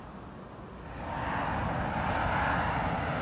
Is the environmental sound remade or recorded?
recorded